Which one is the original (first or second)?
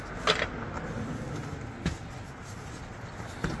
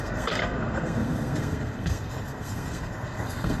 first